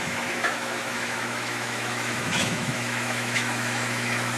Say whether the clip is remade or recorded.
remade